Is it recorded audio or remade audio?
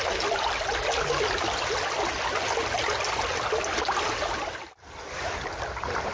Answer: recorded